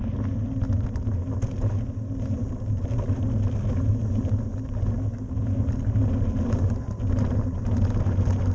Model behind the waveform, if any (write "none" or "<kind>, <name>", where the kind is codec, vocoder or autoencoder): none